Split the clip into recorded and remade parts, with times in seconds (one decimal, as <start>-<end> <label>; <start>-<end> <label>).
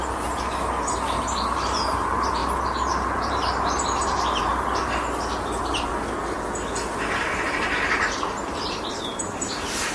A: 0.0-2.4 remade; 2.4-2.9 recorded; 2.9-4.5 remade; 4.5-7.2 recorded; 7.2-9.9 remade